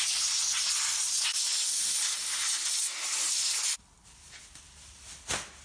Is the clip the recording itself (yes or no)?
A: yes